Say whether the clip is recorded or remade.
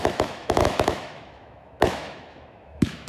remade